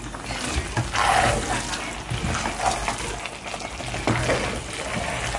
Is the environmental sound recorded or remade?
recorded